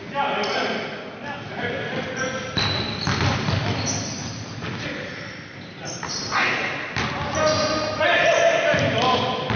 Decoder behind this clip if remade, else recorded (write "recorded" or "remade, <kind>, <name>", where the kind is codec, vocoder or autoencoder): recorded